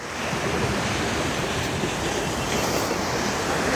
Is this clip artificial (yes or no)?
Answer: no